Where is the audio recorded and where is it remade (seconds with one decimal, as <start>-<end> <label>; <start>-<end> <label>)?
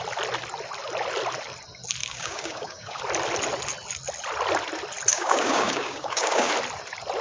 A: 0.0-2.0 recorded; 2.0-3.0 remade; 3.0-5.1 recorded; 5.1-6.5 remade; 6.5-7.2 recorded